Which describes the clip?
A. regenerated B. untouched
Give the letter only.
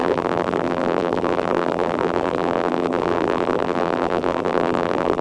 A